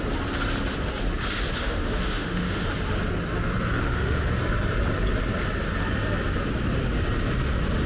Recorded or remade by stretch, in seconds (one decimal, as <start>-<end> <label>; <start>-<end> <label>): 0.0-1.6 recorded; 1.6-2.7 remade; 2.7-3.8 recorded; 3.8-4.4 remade; 4.4-7.9 recorded